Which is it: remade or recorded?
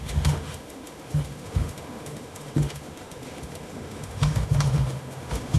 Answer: remade